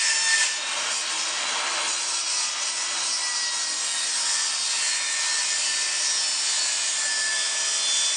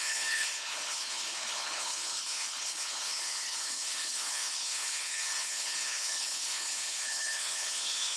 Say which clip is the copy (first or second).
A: second